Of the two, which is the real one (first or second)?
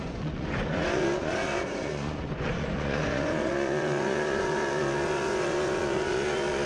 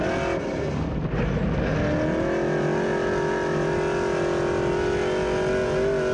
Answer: second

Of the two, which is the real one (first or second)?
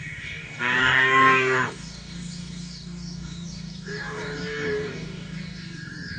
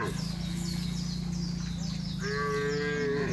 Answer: second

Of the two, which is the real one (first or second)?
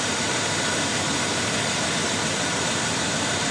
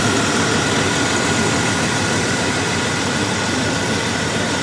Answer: second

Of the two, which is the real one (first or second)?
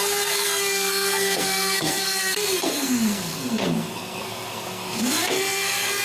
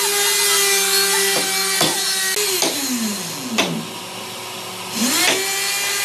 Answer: second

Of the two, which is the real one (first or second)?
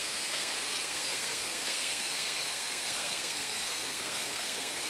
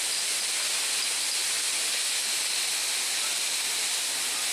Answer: second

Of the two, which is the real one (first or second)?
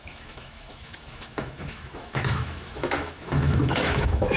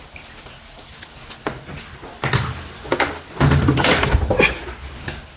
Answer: second